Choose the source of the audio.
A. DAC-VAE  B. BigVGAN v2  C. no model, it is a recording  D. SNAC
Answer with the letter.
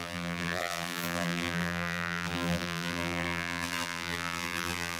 B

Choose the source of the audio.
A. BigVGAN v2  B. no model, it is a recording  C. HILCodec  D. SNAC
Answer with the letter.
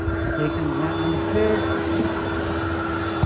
B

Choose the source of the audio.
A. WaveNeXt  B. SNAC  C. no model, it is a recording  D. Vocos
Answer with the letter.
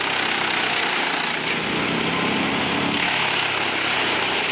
C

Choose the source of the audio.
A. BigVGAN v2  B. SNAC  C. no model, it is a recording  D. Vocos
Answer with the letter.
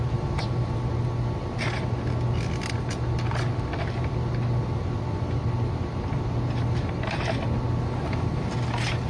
C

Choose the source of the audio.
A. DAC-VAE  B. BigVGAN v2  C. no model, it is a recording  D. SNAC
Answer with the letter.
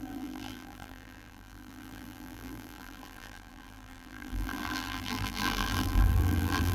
B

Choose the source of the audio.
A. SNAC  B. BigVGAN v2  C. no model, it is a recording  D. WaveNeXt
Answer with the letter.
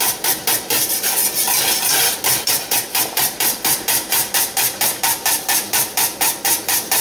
B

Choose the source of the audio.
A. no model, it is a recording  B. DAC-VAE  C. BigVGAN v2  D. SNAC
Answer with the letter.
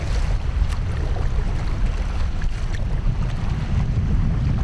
A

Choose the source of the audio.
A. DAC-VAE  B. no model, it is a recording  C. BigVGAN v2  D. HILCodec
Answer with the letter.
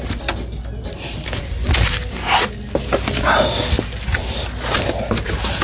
B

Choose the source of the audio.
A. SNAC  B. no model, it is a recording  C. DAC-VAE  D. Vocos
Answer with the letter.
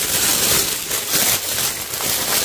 B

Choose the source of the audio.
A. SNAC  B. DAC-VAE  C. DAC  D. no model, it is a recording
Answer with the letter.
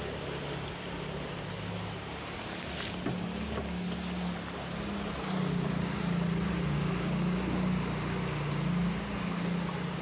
D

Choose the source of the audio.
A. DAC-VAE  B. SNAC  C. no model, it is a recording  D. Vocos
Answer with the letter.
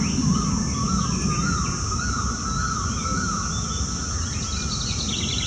C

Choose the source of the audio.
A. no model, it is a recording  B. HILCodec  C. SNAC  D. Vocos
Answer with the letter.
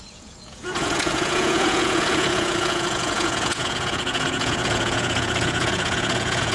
D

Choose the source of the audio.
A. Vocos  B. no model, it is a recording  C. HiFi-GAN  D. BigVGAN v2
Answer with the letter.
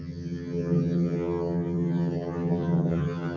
C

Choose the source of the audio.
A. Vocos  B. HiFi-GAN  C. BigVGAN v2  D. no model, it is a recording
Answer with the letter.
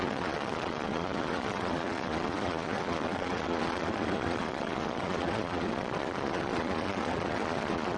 A